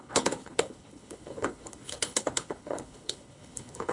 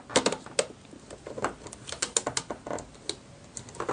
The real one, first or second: second